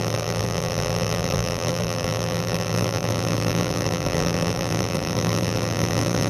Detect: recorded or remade remade